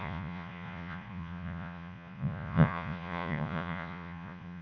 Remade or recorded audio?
remade